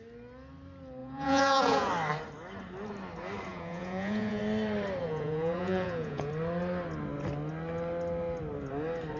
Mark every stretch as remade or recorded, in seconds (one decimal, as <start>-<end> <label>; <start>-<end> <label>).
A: 0.0-1.0 recorded; 1.0-1.9 remade; 1.9-3.5 recorded; 3.5-4.4 remade; 4.4-5.0 recorded; 5.0-6.3 remade; 6.3-9.2 recorded